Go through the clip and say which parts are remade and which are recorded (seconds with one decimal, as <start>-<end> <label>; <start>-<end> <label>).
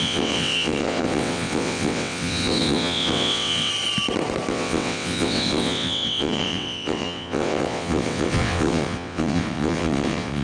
0.0-3.7 remade; 3.7-4.5 recorded; 4.5-10.4 remade